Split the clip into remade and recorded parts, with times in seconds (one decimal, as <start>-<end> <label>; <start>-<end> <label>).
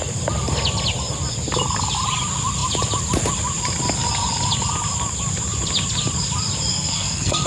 0.0-6.7 recorded; 6.7-7.5 remade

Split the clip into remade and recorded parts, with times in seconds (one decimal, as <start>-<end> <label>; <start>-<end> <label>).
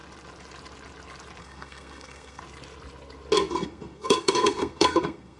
0.0-1.4 recorded; 1.4-2.4 remade; 2.4-3.5 recorded; 3.5-5.4 remade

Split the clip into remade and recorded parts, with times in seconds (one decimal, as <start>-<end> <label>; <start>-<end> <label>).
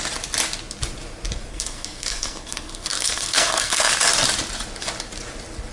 0.0-1.5 recorded; 1.5-3.9 remade; 3.9-5.7 recorded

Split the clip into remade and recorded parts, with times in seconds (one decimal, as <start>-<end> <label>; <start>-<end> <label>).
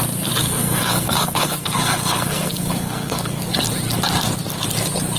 0.0-0.4 recorded; 0.4-3.5 remade; 3.5-5.2 recorded